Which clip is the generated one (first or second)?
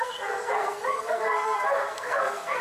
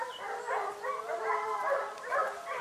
first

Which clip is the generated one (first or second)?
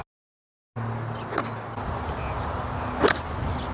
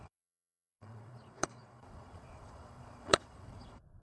second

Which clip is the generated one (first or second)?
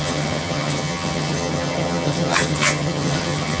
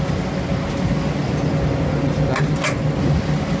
first